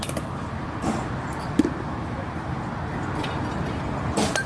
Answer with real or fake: real